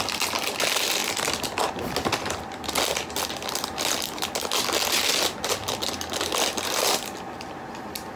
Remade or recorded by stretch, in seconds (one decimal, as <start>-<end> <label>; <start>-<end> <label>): 0.0-8.2 recorded